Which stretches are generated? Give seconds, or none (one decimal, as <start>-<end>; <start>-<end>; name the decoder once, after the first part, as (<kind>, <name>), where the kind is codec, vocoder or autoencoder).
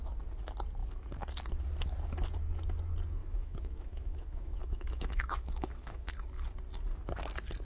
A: 3.2-6.1 (autoencoder, DAC-VAE)